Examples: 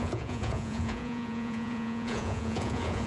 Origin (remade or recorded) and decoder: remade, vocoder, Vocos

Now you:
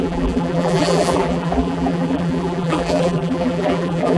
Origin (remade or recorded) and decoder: remade, vocoder, BigVGAN v2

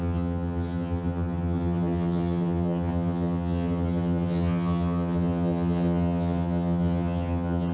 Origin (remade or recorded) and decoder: remade, vocoder, HiFi-GAN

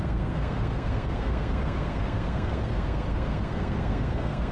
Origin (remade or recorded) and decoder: remade, codec, SNAC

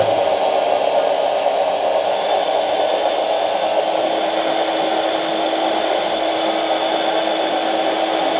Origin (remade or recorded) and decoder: recorded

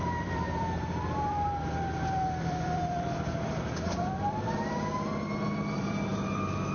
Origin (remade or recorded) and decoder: remade, vocoder, BigVGAN v2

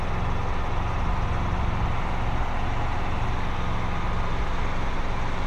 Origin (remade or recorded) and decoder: recorded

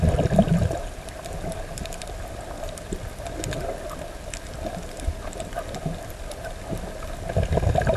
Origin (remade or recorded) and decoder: recorded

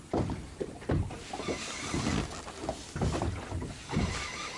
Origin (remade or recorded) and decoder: recorded